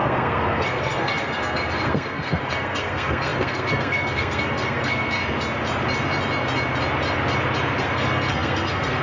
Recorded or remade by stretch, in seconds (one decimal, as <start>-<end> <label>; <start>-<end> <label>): 0.0-5.2 remade; 5.2-7.8 recorded; 7.8-9.0 remade